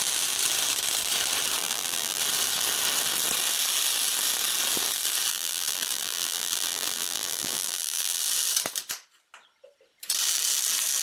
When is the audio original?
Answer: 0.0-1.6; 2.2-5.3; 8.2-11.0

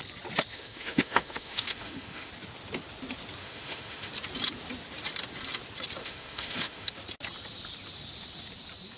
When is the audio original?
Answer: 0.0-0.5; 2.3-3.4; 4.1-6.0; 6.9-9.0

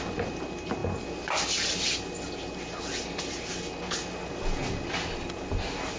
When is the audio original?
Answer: 0.0-6.0

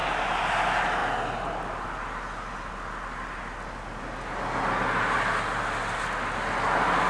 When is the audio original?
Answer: 0.0-7.1

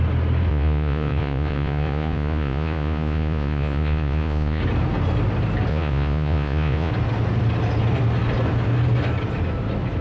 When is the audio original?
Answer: 0.0-0.5; 4.6-5.7; 6.9-10.0